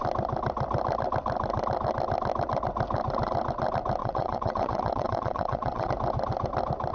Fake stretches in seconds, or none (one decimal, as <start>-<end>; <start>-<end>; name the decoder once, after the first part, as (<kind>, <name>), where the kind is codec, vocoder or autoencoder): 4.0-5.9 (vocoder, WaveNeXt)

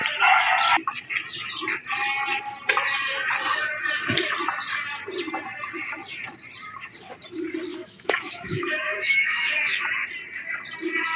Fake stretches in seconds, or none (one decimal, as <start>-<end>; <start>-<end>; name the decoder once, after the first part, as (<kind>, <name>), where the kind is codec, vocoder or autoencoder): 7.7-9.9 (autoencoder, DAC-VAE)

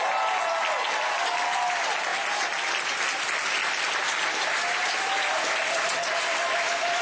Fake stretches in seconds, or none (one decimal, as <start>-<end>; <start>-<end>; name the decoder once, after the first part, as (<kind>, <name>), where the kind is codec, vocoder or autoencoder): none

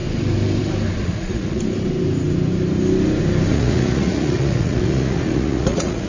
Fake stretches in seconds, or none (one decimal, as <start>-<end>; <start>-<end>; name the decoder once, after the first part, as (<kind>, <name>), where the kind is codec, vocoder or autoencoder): 1.0-1.6 (vocoder, Vocos); 3.5-6.1